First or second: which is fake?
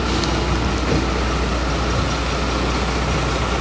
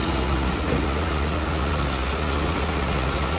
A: second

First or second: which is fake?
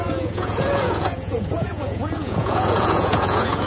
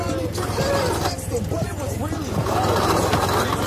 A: first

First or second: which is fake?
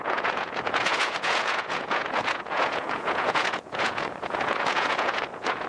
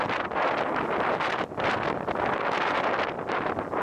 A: first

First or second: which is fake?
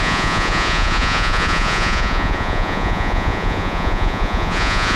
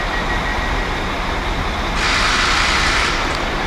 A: first